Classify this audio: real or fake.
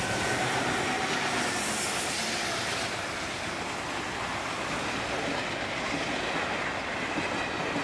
real